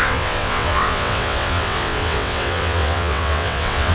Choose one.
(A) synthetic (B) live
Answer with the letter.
A